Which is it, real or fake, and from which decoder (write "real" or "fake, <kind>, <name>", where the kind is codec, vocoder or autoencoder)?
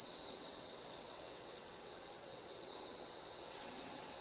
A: fake, vocoder, WaveNeXt